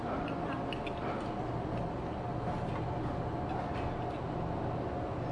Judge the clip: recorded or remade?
recorded